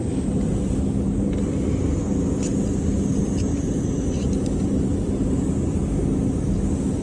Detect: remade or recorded recorded